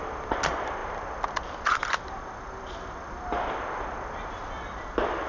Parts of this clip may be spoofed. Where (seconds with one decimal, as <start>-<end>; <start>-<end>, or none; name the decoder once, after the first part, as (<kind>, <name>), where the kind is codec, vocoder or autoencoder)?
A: none